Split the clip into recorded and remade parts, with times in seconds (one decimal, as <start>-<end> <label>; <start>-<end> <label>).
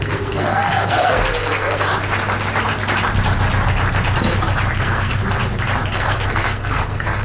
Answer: 0.0-1.9 remade; 1.9-4.8 recorded; 4.8-5.2 remade; 5.2-5.9 recorded; 5.9-7.2 remade